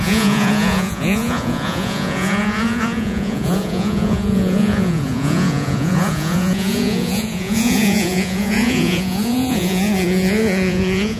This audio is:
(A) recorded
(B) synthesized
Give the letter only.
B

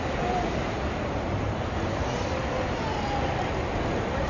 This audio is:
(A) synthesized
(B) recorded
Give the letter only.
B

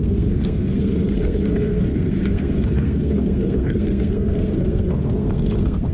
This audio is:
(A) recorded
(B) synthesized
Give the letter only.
B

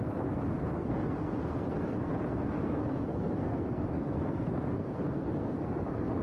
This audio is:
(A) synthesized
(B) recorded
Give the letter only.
A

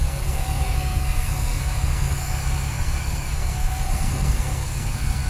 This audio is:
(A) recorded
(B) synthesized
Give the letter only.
B